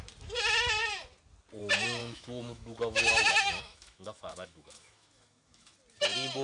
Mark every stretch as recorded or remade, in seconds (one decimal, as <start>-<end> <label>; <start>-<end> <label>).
0.0-2.0 recorded; 2.0-5.8 remade; 5.8-6.4 recorded